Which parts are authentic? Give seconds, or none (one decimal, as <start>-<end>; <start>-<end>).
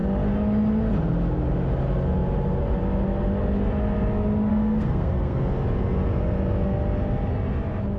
0.0-4.5; 5.4-8.0